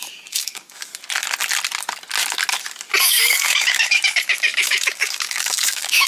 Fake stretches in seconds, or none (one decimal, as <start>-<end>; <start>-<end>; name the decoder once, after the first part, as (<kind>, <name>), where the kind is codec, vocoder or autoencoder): 0.0-0.9 (codec, DAC); 3.0-6.1